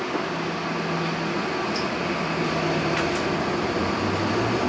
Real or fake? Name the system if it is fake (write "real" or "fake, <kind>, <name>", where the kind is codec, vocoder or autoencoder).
real